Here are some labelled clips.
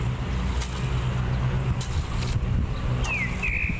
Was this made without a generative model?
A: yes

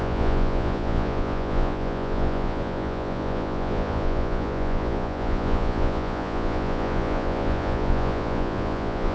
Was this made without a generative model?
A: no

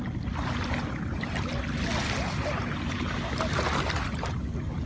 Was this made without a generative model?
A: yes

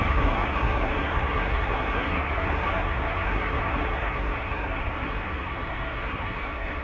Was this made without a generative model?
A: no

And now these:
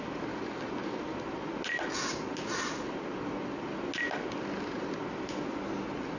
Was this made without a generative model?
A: yes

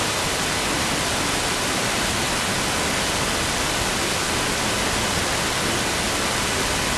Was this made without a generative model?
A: yes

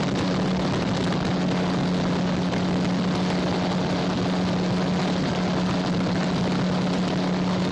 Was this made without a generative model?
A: yes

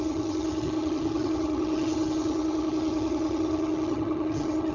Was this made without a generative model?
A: no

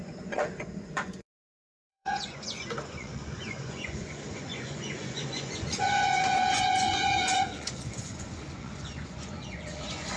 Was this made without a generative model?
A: no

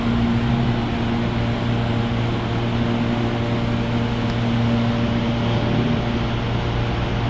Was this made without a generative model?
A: yes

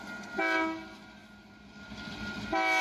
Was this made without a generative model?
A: yes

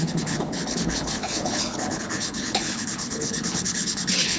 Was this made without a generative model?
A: no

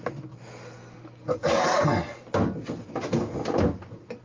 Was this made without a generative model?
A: yes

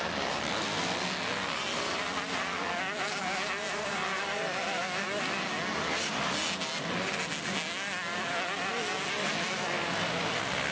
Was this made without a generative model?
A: yes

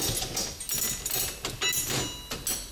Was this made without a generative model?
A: yes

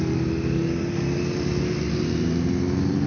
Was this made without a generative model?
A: yes